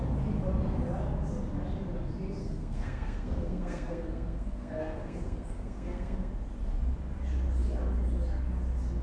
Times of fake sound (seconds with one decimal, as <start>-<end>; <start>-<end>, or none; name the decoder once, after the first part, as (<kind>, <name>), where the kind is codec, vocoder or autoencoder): 2.4-6.3 (codec, SNAC)